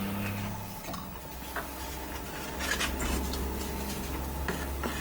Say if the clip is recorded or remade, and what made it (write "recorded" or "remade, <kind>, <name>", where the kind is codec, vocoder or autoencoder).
recorded